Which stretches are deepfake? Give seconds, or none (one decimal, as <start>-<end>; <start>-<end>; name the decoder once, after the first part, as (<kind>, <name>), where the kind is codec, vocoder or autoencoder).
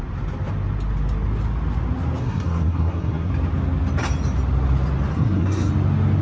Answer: 2.2-3.3 (codec, SNAC); 5.1-5.7